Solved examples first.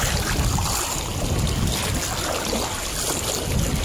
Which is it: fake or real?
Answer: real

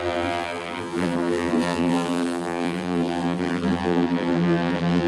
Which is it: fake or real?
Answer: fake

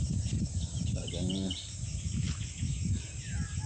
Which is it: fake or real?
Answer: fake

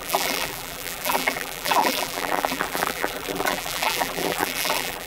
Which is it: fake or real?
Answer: fake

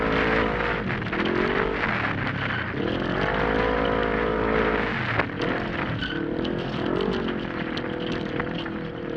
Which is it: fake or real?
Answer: real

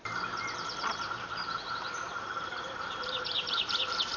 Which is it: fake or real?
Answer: fake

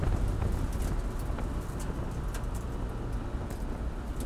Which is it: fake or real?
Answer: real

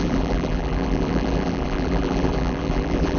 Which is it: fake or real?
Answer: fake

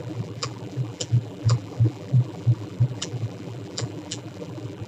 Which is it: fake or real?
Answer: fake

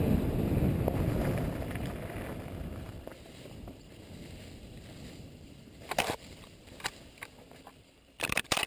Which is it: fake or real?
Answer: fake